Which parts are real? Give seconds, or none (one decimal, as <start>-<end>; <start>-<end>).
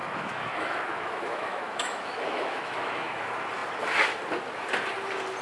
3.2-5.4